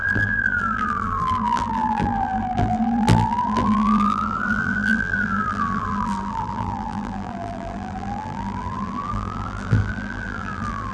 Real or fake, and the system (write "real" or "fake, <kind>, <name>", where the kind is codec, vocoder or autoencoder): fake, vocoder, BigVGAN v2